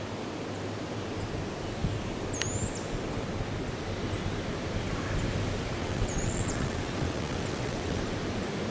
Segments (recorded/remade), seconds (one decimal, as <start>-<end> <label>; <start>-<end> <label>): 0.0-5.8 recorded; 5.8-8.0 remade; 8.0-8.7 recorded